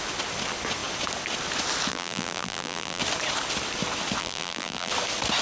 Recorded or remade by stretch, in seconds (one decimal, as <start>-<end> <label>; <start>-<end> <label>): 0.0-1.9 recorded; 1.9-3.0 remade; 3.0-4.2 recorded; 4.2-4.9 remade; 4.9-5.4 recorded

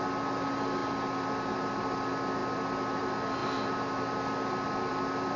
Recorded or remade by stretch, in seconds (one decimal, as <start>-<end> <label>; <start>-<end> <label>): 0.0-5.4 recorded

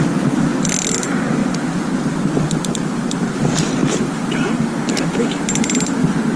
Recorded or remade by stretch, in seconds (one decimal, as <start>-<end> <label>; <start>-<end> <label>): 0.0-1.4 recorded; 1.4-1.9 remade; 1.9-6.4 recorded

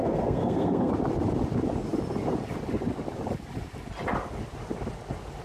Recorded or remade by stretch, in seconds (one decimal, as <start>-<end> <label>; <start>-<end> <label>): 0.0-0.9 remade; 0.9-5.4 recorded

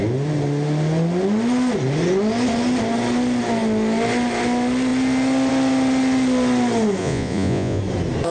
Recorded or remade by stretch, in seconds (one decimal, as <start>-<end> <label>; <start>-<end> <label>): 0.0-7.0 recorded; 7.0-7.8 remade; 7.8-8.3 recorded